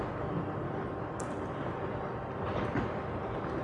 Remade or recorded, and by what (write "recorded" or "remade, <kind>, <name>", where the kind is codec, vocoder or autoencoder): recorded